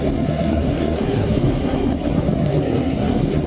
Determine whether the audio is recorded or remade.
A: remade